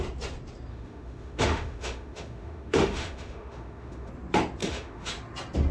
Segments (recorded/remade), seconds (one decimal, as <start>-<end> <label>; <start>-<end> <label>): 0.0-0.7 recorded; 0.7-4.1 remade; 4.1-4.6 recorded; 4.6-5.1 remade; 5.1-5.7 recorded

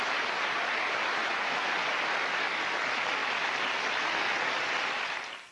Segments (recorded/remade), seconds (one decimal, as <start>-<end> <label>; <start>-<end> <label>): 0.0-1.2 recorded; 1.2-1.9 remade; 1.9-5.5 recorded

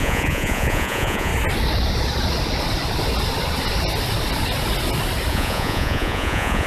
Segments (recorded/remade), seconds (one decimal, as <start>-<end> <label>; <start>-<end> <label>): 0.0-1.3 remade; 1.3-5.3 recorded; 5.3-6.7 remade

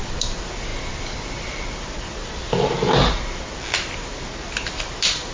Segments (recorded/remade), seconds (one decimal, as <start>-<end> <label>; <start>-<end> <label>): 0.0-5.3 recorded

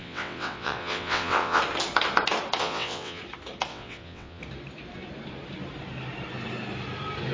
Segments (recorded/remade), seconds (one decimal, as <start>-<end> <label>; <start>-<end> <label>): 0.0-1.6 remade; 1.6-2.6 recorded; 2.6-3.2 remade; 3.2-3.7 recorded; 3.7-4.4 remade; 4.4-7.3 recorded

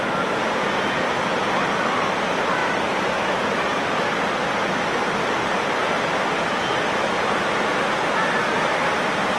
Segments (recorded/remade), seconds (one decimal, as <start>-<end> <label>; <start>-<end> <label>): 0.0-2.6 recorded; 2.6-4.0 remade; 4.0-9.4 recorded

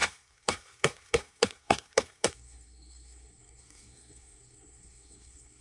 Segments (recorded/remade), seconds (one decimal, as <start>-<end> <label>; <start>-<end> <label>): 0.0-5.6 remade